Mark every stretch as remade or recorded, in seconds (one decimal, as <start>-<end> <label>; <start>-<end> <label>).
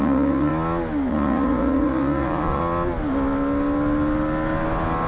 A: 0.0-0.5 remade; 0.5-1.1 recorded; 1.1-2.6 remade; 2.6-5.1 recorded